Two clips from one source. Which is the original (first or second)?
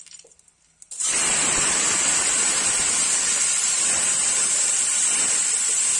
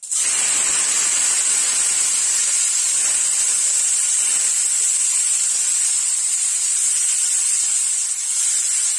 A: second